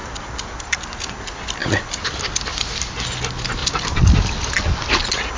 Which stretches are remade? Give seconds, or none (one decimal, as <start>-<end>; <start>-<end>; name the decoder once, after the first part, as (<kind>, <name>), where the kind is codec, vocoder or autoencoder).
1.6-2.7 (vocoder, BigVGAN v2); 3.6-4.6